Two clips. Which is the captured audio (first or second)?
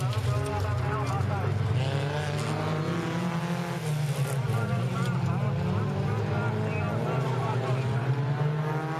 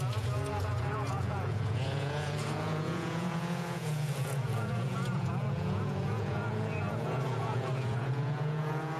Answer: first